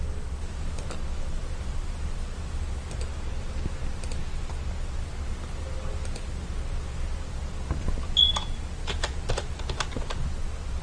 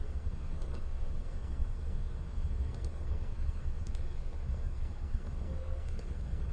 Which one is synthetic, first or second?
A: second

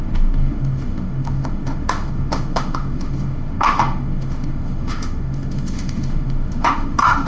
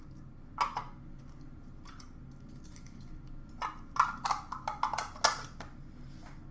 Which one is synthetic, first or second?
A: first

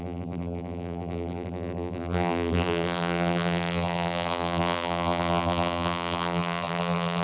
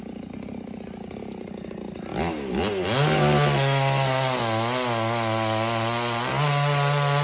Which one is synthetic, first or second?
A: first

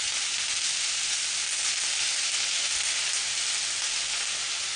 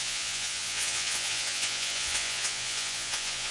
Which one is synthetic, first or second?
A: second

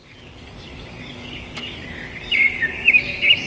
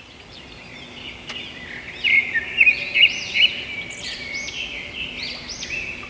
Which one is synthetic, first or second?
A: first